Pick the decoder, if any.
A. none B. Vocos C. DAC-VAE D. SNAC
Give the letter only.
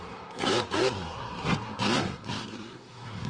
D